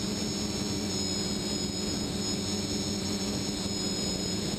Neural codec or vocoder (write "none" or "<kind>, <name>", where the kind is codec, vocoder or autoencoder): none